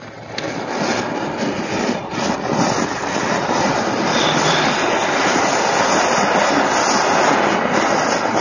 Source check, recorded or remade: recorded